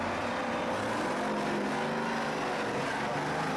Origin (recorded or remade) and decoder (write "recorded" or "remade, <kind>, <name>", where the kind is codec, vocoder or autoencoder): recorded